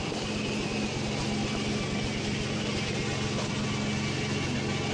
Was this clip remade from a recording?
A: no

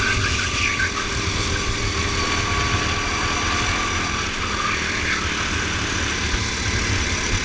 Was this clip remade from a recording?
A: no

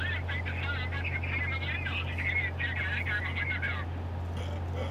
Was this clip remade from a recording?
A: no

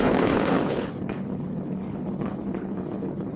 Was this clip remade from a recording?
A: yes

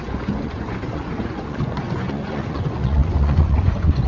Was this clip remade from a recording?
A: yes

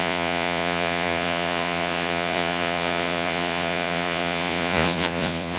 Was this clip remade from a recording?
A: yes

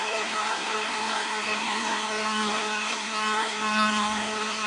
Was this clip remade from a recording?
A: yes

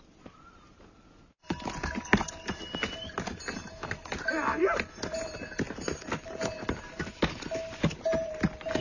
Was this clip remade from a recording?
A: no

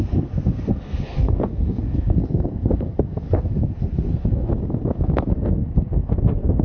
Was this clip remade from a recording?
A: yes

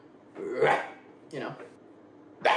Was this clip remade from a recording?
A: no